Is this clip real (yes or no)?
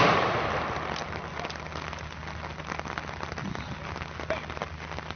yes